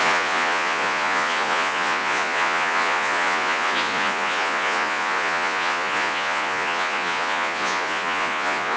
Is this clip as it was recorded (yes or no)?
no